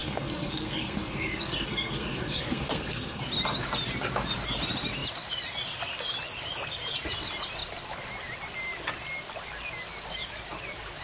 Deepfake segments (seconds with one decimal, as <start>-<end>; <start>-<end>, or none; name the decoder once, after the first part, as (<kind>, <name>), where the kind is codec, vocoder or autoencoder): 0.0-3.2 (codec, SNAC)